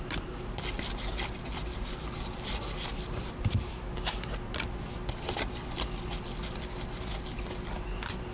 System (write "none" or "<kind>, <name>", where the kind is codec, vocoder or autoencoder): none